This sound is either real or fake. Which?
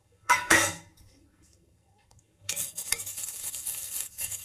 fake